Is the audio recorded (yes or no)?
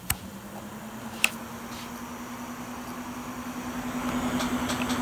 yes